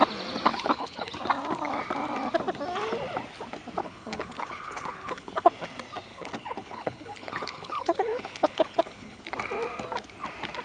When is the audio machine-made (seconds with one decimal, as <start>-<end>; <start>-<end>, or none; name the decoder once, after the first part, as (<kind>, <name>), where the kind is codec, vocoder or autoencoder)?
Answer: 0.5-1.1 (codec, HILCodec); 3.8-5.5; 6.1-9.2